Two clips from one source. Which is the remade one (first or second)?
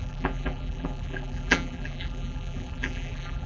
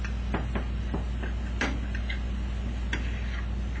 first